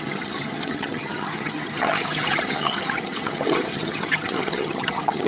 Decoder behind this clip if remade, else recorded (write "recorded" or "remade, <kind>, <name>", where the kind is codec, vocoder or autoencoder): remade, vocoder, HiFi-GAN